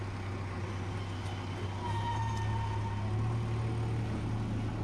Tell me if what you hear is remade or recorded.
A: recorded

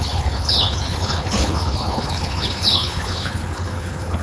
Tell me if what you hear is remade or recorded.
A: remade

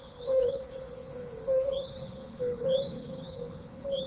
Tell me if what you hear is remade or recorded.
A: remade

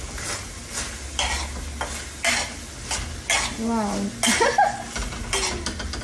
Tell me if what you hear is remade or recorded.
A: recorded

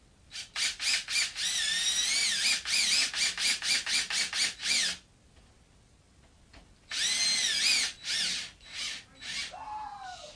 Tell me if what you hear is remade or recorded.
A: recorded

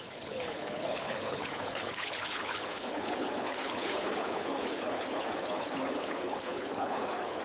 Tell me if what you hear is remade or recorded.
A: remade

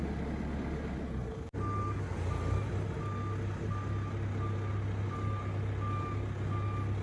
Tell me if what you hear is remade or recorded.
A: recorded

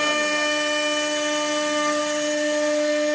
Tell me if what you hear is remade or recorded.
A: recorded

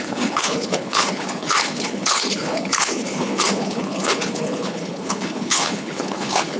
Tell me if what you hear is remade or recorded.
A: remade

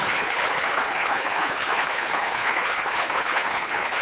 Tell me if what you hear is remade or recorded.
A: remade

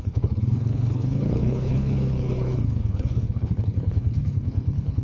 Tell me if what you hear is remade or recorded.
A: remade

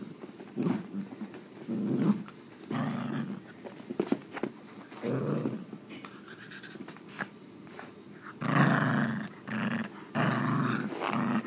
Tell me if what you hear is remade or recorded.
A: recorded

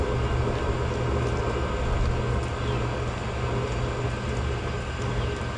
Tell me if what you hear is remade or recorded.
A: recorded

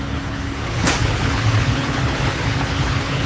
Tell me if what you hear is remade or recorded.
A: remade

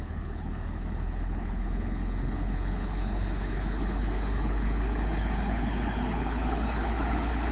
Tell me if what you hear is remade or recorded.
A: remade